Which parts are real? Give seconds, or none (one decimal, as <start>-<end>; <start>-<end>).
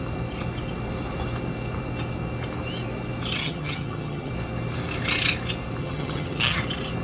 0.0-3.4; 4.3-5.8; 6.6-7.0